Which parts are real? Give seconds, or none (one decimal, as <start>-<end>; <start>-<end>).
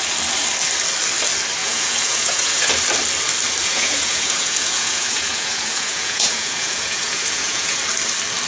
0.0-1.6; 2.7-3.6; 7.8-8.5